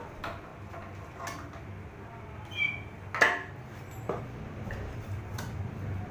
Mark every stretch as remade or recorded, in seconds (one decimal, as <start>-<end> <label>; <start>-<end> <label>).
0.0-6.1 recorded